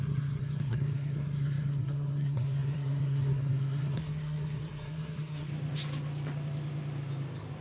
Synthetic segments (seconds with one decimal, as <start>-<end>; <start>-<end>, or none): 0.0-5.5